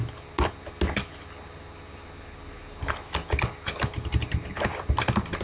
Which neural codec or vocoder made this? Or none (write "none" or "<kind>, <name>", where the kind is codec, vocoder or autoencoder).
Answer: none